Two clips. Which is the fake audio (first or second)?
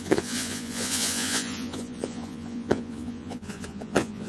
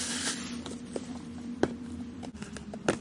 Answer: first